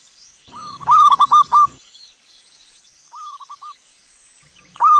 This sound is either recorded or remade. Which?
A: remade